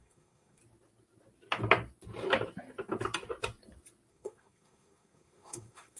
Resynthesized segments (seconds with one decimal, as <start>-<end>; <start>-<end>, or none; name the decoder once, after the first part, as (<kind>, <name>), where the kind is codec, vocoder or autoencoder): 0.0-0.6 (codec, SNAC); 4.1-6.0